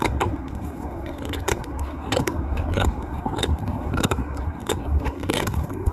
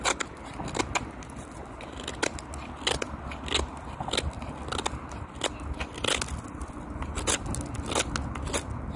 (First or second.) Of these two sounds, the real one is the second